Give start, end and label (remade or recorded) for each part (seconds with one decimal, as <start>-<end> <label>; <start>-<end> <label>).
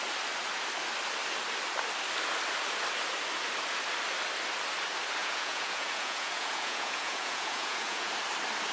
0.0-5.2 recorded; 5.2-8.1 remade; 8.1-8.7 recorded